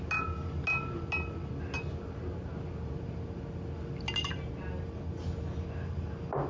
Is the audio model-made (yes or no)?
no